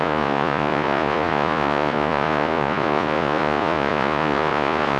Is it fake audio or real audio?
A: fake